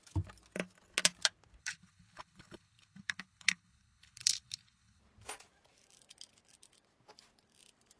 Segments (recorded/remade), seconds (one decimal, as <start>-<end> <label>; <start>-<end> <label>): 0.0-1.6 recorded; 1.6-5.0 remade; 5.0-8.0 recorded